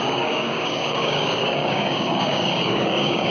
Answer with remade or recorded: remade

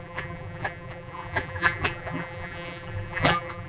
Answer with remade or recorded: remade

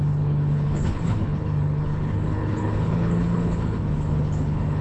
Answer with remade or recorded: remade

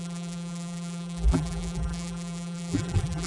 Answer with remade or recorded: remade